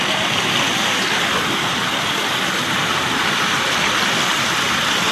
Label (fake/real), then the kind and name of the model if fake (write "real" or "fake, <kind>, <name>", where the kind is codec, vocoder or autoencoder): fake, vocoder, BigVGAN v2